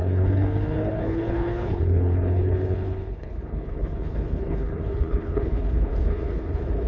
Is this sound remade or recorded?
remade